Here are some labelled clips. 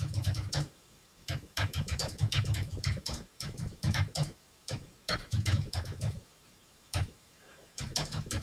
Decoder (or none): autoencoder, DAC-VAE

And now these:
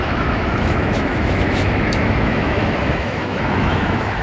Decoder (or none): autoencoder, DAC-VAE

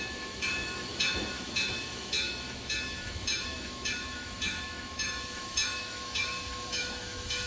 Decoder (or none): autoencoder, DAC-VAE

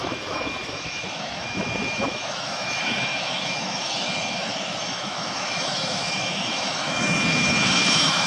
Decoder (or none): autoencoder, DAC-VAE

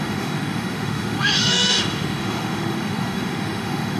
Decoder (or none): autoencoder, DAC-VAE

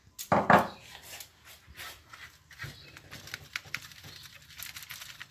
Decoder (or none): none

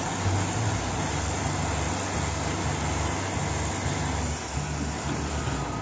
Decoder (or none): none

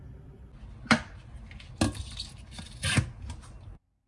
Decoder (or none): none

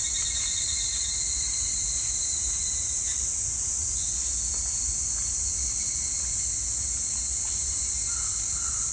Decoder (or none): none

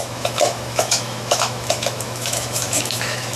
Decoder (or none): autoencoder, DAC-VAE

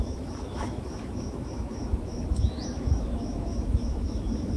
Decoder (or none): autoencoder, DAC-VAE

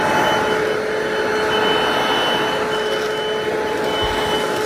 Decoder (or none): none